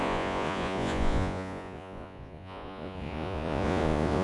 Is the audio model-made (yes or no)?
yes